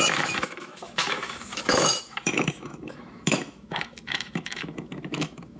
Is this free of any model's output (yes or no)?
no